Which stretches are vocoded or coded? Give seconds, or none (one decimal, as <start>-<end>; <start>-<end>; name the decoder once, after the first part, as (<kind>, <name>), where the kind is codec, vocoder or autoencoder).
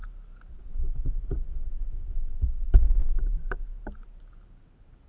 none